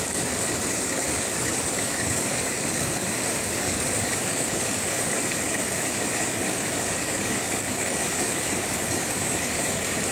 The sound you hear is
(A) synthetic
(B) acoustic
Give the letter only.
A